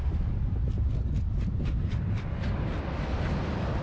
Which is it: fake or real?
real